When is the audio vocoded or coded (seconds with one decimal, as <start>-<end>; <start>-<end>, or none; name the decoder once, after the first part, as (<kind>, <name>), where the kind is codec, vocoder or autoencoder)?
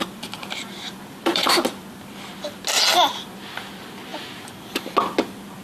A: 0.4-1.5 (vocoder, BigVGAN v2)